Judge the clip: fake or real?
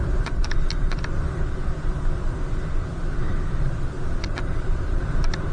real